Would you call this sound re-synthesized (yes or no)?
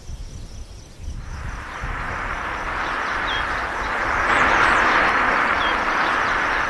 no